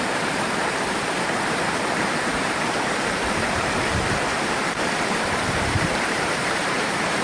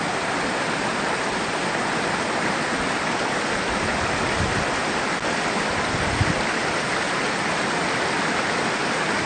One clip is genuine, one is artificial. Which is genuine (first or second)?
second